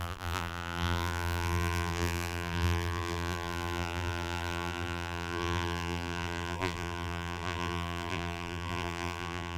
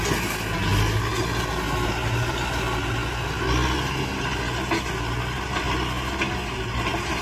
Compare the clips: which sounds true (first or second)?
second